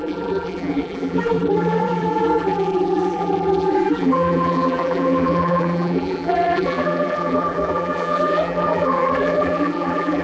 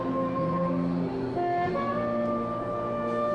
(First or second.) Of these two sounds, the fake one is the first